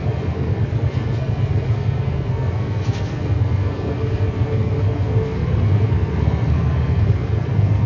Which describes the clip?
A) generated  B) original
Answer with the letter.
A